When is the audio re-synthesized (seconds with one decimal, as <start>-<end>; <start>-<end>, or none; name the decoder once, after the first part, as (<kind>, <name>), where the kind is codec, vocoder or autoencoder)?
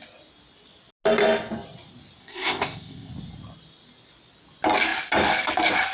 2.2-3.1 (codec, ZipCodec)